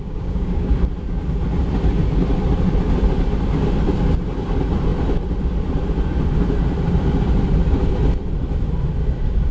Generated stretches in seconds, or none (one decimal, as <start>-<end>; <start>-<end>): 0.0-0.7